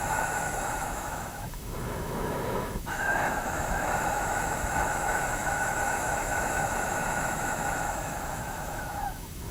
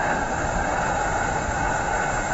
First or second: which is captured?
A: second